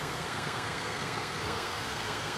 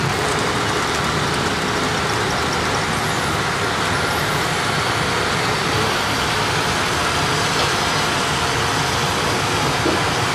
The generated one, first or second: first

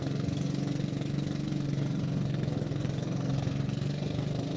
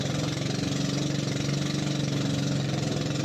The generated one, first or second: first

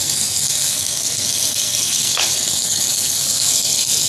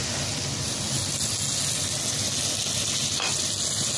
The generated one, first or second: first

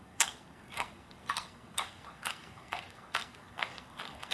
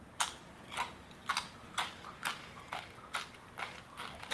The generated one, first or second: first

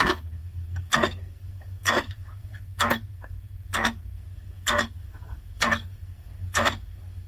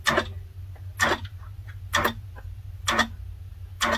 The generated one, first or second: first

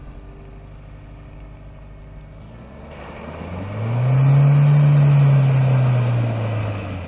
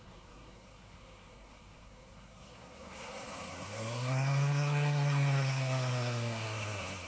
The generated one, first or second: second